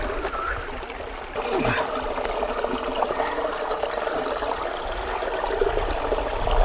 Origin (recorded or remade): recorded